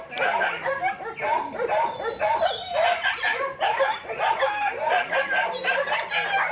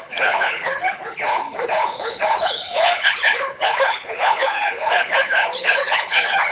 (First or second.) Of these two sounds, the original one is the first